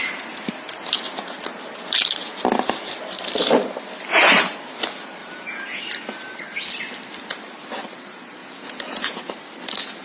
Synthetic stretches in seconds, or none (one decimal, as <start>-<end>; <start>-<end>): 5.2-5.8; 8.4-9.3